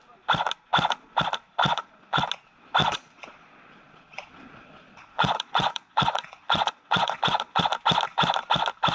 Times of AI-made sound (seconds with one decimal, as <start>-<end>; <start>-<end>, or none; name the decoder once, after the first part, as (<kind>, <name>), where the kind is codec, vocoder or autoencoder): 1.6-2.2 (vocoder, Vocos); 2.8-7.6